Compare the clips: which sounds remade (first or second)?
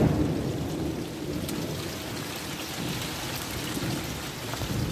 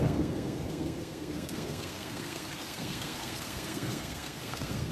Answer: second